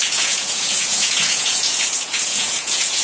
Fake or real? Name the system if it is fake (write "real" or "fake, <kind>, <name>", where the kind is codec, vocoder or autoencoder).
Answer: fake, vocoder, Vocos